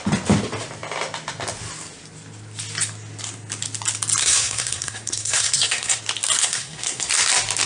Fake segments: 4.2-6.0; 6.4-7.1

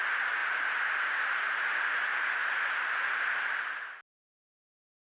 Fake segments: none

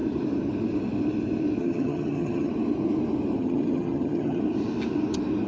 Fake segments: 1.6-2.5; 3.4-4.4

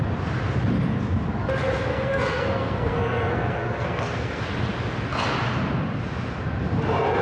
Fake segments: 1.9-4.4

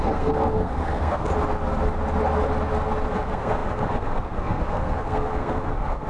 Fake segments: 0.0-1.3; 3.1-6.1

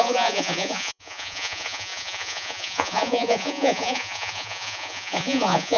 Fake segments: 0.0-5.8